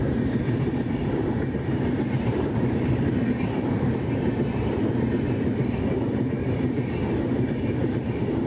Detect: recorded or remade remade